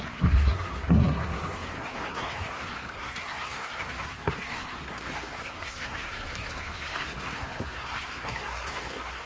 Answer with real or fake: fake